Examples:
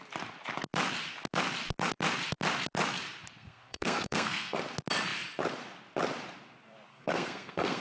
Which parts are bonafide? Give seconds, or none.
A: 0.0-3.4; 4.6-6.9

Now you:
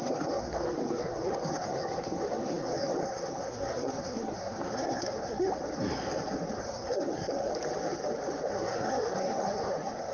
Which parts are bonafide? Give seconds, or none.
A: 5.5-6.6; 7.5-8.5